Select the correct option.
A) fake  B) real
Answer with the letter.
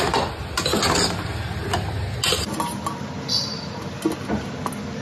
B